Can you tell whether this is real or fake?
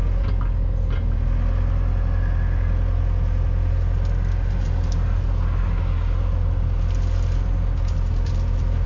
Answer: real